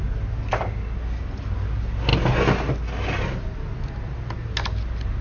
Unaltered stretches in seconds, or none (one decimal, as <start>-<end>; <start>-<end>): 0.0-5.2